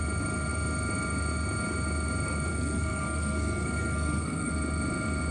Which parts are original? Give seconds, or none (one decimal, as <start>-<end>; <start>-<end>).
0.0-2.5; 4.5-5.3